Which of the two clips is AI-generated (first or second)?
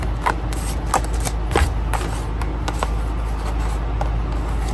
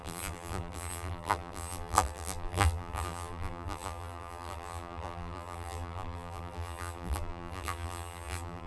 second